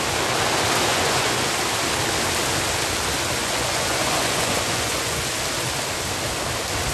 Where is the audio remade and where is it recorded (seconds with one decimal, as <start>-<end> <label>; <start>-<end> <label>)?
0.0-0.9 recorded; 0.9-1.5 remade; 1.5-3.4 recorded; 3.4-5.3 remade; 5.3-6.9 recorded